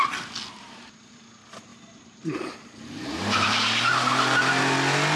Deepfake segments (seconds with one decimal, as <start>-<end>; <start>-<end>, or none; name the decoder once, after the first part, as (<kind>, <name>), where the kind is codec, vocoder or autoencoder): 1.7-4.6 (vocoder, BigVGAN v2)